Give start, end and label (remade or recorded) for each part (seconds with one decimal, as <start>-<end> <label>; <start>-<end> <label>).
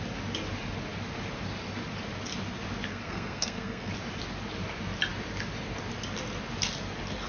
0.0-2.9 recorded; 2.9-3.9 remade; 3.9-7.3 recorded